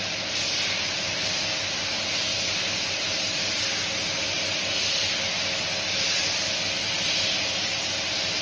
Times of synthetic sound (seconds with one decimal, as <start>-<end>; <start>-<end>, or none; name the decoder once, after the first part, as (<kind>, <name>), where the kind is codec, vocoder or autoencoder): 2.3-3.6 (vocoder, BigVGAN v2)